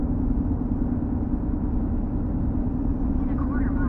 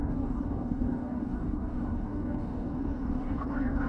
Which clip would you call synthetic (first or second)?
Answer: second